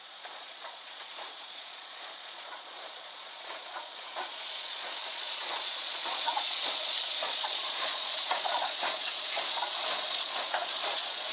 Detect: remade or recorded remade